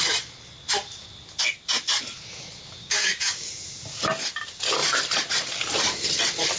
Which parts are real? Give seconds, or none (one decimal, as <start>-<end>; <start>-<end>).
0.0-2.8; 3.5-6.6